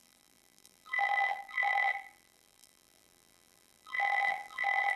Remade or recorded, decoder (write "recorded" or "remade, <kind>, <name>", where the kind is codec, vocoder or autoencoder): remade, vocoder, BigVGAN v2